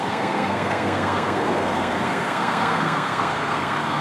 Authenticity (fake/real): fake